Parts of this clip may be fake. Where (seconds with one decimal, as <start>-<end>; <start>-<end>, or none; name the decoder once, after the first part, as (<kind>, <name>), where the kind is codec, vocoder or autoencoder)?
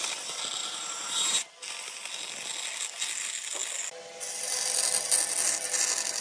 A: 0.6-1.5 (vocoder, BigVGAN v2)